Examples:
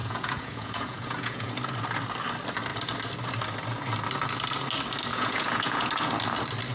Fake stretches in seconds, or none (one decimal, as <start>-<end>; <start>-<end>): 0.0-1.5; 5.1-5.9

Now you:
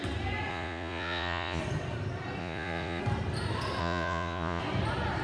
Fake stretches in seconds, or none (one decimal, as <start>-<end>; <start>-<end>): 0.5-1.6; 2.4-3.0; 3.8-4.6

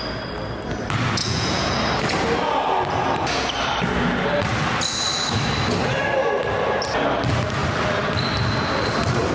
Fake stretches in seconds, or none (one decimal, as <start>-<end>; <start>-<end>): 1.2-1.8

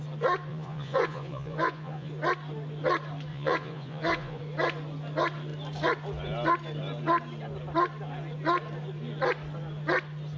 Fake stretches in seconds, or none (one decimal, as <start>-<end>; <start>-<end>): 0.5-2.1; 3.3-4.4

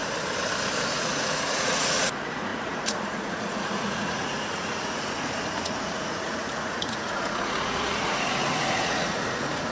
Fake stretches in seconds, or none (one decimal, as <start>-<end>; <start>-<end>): 0.9-9.7